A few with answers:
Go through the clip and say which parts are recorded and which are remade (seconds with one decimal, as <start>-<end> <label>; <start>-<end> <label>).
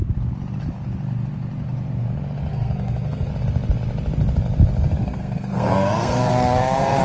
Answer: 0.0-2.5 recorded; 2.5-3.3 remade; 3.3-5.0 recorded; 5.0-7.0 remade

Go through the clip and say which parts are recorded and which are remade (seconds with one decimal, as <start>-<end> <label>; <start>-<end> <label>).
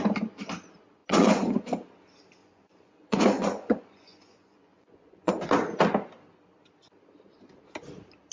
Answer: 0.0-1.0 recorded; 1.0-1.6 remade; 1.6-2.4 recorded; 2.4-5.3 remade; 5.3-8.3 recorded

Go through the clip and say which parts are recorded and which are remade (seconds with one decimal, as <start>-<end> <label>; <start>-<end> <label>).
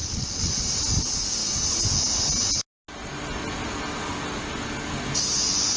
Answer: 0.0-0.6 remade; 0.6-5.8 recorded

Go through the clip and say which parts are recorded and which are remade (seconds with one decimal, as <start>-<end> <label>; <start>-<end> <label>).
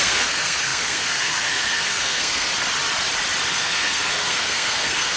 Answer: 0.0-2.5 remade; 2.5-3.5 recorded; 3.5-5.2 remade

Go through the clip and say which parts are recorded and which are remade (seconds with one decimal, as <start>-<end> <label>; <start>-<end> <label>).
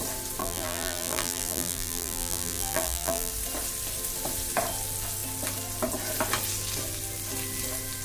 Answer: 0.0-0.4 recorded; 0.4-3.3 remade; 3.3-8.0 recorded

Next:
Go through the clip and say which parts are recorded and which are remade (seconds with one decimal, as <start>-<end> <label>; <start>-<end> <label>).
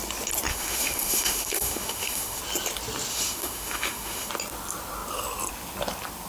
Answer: 0.0-0.5 recorded; 0.5-2.4 remade; 2.4-3.1 recorded; 3.1-4.3 remade; 4.3-6.3 recorded